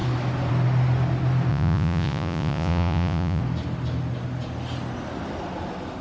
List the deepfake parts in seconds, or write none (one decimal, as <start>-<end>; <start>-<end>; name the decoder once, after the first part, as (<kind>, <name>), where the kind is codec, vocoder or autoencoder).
1.5-3.4 (vocoder, Vocos)